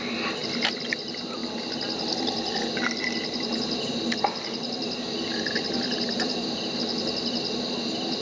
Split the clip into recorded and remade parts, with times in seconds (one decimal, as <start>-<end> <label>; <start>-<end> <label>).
0.0-8.2 recorded